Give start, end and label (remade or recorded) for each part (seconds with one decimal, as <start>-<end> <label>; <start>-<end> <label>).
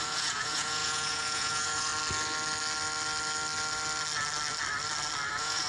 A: 0.0-1.9 remade; 1.9-5.3 recorded; 5.3-5.7 remade